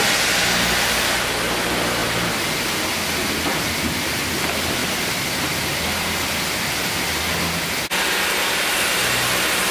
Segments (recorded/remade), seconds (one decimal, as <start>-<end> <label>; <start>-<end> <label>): 0.0-9.7 recorded